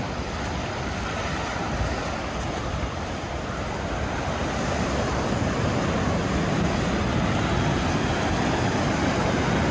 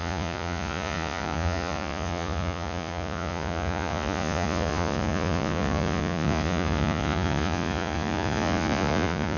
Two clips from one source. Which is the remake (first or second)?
second